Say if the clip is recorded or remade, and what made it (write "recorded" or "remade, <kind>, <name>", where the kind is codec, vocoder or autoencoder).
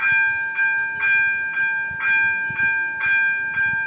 recorded